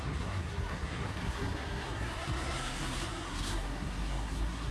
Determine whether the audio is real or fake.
fake